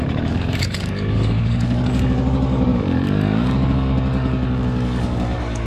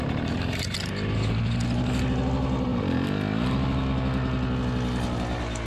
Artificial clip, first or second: first